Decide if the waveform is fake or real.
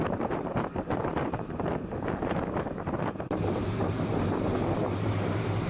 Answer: fake